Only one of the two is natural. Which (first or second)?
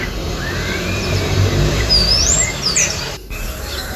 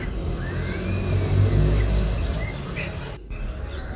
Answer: second